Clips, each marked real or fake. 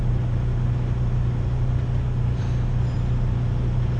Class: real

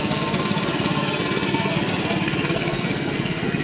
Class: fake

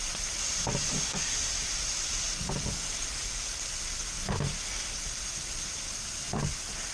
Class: real